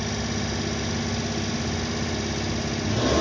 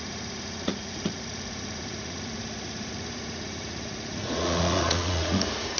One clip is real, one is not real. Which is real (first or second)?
first